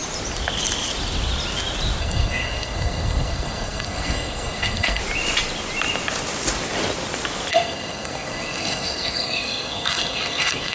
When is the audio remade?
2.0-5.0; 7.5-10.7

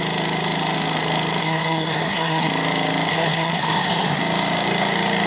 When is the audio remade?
1.4-2.5; 3.1-4.2

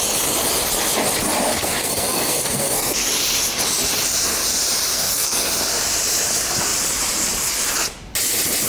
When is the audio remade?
1.5-3.1; 4.9-5.5

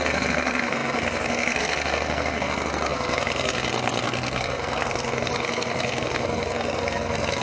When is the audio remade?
0.0-7.4

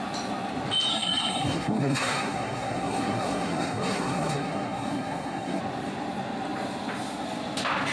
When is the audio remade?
0.9-5.6

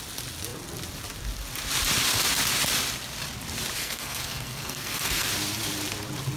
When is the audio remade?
3.8-5.3

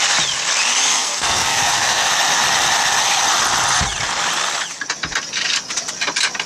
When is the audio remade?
0.9-2.1